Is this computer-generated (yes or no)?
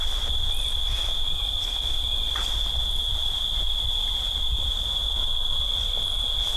no